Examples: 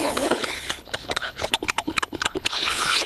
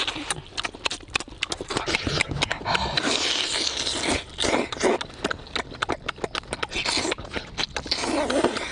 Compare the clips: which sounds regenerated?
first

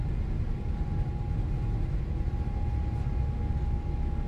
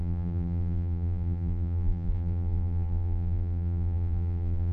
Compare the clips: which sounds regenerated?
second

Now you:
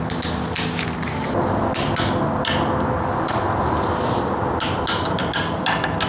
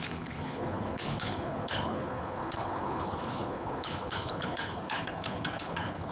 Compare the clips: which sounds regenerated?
second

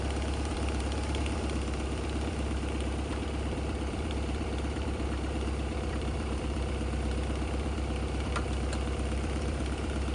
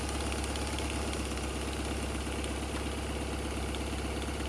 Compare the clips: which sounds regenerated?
first